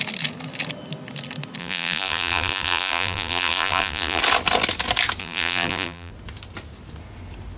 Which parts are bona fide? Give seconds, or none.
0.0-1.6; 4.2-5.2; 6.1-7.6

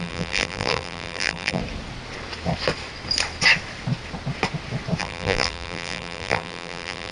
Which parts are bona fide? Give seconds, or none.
1.6-5.0

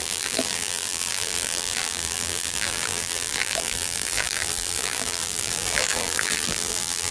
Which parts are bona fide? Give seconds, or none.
none

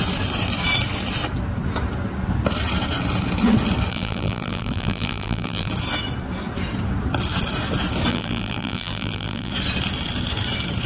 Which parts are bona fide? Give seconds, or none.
0.0-3.9; 5.7-8.1; 9.5-10.9

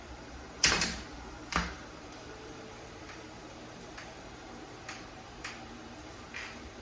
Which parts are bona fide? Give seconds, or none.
none